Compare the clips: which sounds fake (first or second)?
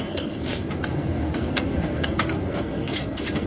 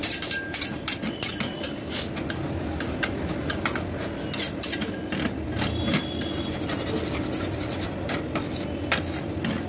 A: first